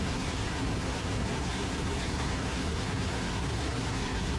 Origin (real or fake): fake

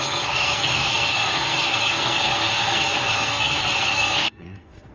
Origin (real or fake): fake